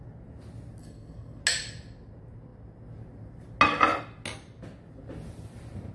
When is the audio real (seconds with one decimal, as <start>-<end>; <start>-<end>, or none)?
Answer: 0.0-0.8; 1.4-5.9